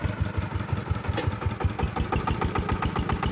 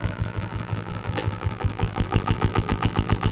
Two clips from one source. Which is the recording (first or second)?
first